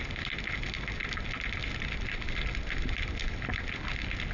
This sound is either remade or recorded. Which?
recorded